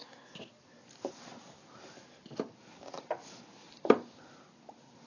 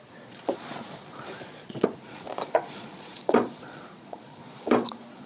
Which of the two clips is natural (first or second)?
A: first